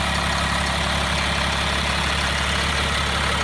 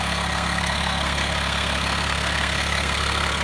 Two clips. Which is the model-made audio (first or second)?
second